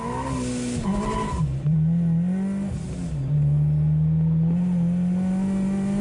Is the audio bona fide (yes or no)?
yes